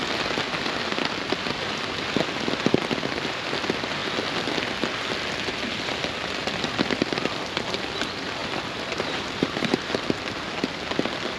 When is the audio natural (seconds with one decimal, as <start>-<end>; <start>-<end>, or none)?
0.0-8.4; 9.9-11.4